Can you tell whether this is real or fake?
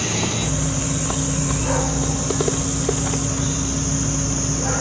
real